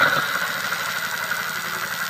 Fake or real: real